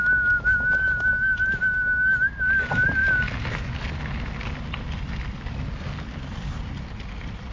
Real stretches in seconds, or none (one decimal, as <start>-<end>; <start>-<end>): 0.0-7.5